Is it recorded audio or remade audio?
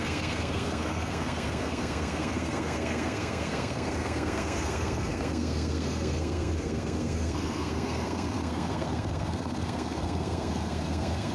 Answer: remade